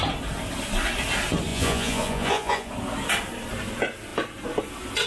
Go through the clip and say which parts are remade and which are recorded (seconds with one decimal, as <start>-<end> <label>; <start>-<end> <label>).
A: 0.0-1.5 recorded; 1.5-2.7 remade; 2.7-5.1 recorded